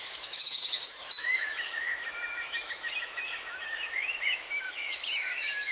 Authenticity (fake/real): fake